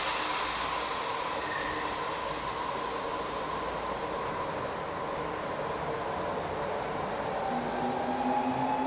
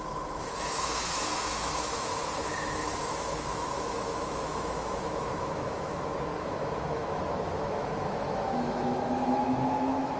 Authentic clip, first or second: first